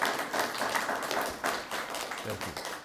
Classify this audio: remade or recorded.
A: recorded